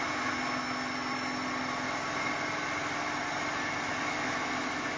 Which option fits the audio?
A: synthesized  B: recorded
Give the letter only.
B